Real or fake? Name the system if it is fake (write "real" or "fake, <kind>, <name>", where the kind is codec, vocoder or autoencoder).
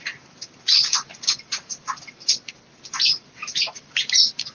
fake, vocoder, BigVGAN v2